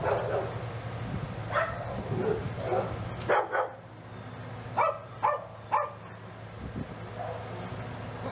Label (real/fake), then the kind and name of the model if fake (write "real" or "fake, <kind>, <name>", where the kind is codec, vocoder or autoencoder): real